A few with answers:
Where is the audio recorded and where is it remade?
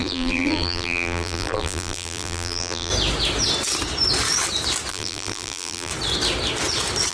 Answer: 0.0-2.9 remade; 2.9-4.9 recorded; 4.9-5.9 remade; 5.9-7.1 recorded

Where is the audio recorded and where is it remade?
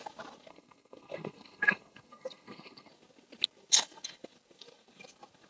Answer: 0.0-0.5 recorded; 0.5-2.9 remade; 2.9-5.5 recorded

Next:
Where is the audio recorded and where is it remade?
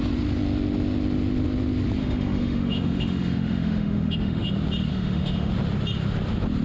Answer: 0.0-2.0 recorded; 2.0-4.5 remade; 4.5-4.9 recorded; 4.9-5.5 remade; 5.5-6.6 recorded